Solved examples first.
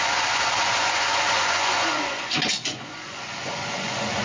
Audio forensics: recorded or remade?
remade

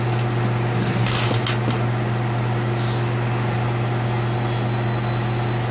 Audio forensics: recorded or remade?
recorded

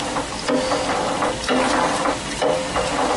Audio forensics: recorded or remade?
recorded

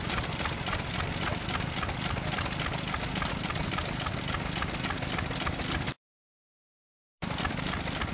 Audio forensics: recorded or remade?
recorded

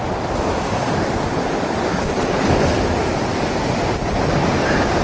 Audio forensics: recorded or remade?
recorded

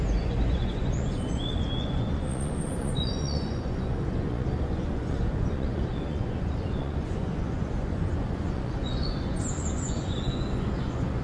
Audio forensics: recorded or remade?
remade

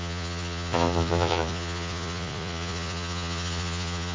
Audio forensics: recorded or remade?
remade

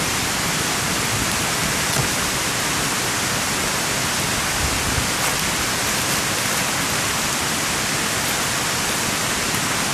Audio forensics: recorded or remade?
recorded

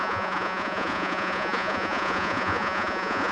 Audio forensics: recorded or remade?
remade